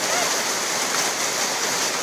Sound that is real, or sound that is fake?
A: real